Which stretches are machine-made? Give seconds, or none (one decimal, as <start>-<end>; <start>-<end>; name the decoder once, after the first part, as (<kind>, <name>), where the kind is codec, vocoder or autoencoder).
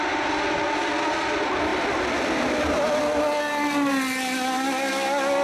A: none